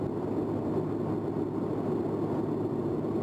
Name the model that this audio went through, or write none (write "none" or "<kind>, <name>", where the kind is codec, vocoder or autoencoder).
none